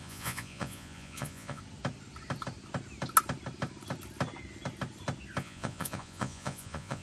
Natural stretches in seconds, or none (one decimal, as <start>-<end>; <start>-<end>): 1.6-5.4